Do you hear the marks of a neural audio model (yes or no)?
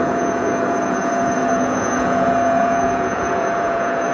yes